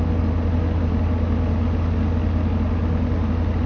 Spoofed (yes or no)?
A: no